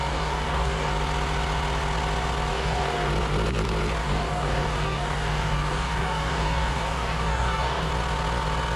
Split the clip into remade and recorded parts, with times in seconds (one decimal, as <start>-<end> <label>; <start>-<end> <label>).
0.0-0.9 remade; 0.9-2.5 recorded; 2.5-3.1 remade; 3.1-4.0 recorded; 4.0-7.9 remade; 7.9-8.8 recorded